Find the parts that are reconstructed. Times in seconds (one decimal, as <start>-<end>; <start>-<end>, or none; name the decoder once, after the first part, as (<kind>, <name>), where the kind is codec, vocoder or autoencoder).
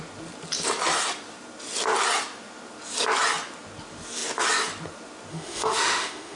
5.3-6.4 (autoencoder, DAC-VAE)